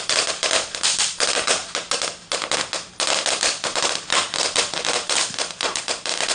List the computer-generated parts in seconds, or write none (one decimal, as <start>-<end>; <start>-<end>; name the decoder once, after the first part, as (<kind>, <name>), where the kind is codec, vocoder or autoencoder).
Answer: 0.0-1.6 (vocoder, BigVGAN v2); 3.3-6.3